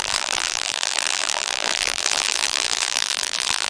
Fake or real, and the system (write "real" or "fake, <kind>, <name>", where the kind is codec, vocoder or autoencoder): fake, vocoder, BigVGAN v2